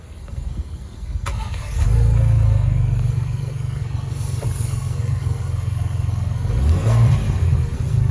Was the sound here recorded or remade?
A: remade